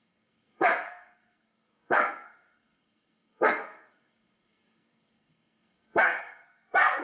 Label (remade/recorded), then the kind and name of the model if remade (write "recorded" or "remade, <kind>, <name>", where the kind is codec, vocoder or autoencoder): remade, codec, SNAC